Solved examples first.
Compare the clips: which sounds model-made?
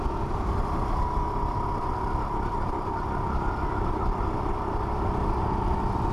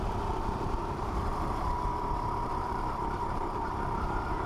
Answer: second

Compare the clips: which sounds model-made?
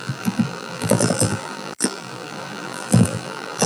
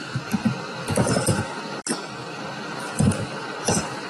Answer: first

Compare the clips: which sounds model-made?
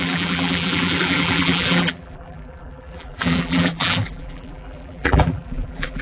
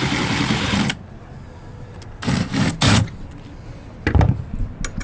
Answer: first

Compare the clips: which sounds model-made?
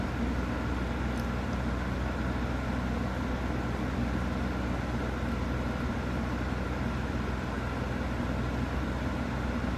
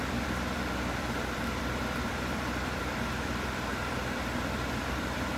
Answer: second